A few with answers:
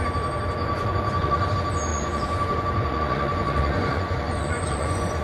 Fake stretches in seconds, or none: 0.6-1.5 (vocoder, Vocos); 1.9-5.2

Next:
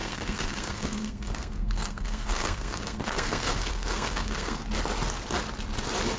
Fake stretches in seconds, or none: 0.0-4.6 (codec, SNAC)

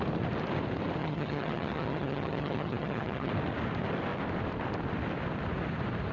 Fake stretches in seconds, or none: 1.0-3.3 (vocoder, HiFi-GAN)

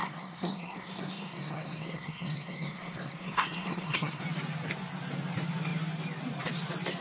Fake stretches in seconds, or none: 0.0-4.2 (codec, SNAC)

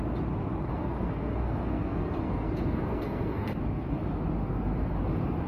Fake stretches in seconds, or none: 0.7-4.0 (codec, SNAC); 4.4-5.0

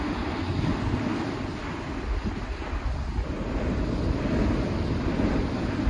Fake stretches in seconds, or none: none

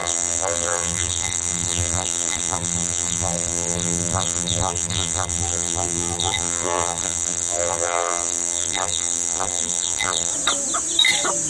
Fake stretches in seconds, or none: 0.0-10.3 (vocoder, BigVGAN v2)

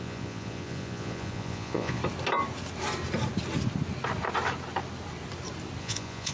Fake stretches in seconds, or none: 0.0-2.0 (vocoder, Vocos); 5.8-6.3